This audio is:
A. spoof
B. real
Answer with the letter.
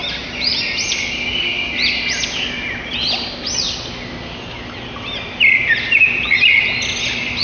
B